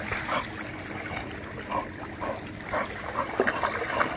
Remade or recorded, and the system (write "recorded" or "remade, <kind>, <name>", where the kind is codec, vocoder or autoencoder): recorded